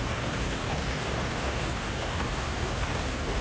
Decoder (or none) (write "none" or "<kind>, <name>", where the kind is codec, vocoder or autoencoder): codec, DAC